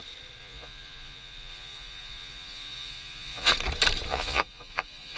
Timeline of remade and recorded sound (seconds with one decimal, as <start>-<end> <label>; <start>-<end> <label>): 0.0-0.4 recorded; 0.4-3.5 remade; 3.5-4.1 recorded; 4.1-5.2 remade